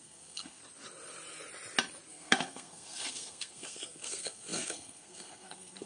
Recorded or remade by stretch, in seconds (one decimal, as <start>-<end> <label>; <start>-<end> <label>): 0.0-0.6 remade; 0.6-2.1 recorded; 2.1-5.9 remade